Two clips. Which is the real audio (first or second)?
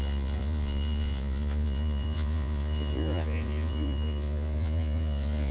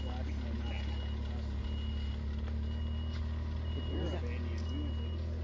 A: second